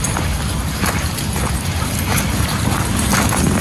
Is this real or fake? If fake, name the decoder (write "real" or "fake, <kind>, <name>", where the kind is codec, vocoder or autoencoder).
real